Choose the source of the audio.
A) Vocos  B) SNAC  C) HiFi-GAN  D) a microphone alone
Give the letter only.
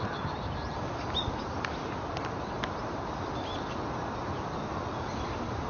D